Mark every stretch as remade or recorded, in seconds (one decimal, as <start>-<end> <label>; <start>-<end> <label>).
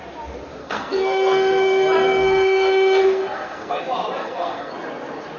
0.0-0.6 recorded; 0.6-3.8 remade; 3.8-4.2 recorded; 4.2-4.7 remade; 4.7-5.4 recorded